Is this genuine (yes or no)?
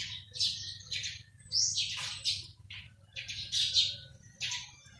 yes